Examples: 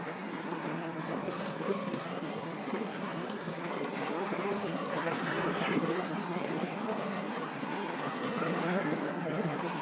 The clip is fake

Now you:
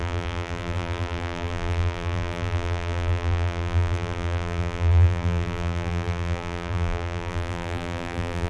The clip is fake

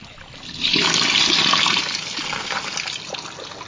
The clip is real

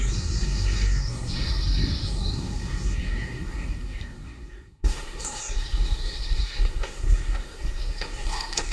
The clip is fake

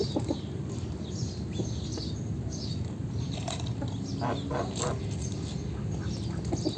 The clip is real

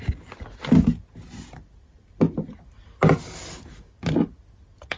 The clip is real